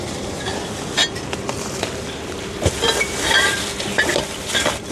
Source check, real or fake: fake